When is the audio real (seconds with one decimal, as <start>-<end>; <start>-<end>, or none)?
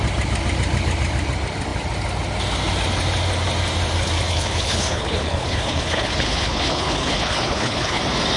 0.0-4.3; 8.0-8.4